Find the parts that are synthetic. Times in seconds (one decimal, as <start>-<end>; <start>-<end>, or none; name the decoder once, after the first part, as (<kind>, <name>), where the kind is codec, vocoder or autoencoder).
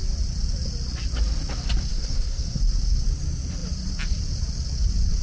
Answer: 1.9-2.6 (codec, SNAC)